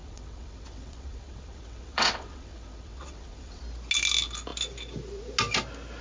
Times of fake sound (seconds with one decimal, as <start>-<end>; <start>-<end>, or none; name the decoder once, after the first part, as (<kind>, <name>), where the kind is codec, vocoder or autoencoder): 0.0-3.6 (vocoder, WaveNeXt)